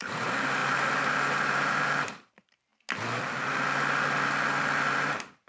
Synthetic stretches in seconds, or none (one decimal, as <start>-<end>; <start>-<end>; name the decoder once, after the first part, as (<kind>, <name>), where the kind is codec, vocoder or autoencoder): 0.0-2.7 (vocoder, BigVGAN v2); 4.9-5.5